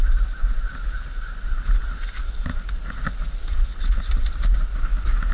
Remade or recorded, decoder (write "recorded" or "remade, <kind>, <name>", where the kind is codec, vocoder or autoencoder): recorded